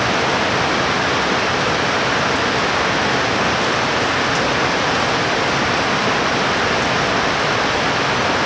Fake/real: real